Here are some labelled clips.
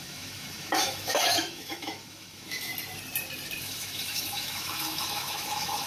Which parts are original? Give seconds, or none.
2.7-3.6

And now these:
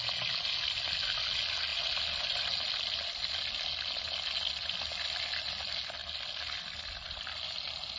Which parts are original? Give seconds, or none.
0.0-8.0

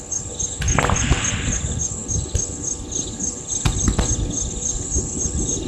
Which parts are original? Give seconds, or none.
0.0-5.7

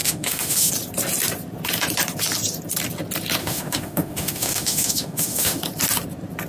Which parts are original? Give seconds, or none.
0.7-3.4; 5.6-6.5

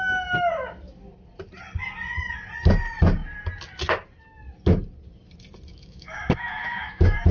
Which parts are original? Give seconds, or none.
0.0-5.7

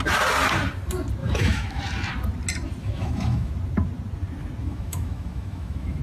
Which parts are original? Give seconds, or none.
0.0-1.2; 1.8-2.8; 3.5-4.6